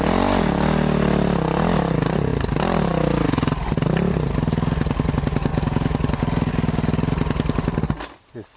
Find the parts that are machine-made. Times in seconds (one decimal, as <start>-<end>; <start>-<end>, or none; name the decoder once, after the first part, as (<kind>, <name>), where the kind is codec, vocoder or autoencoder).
none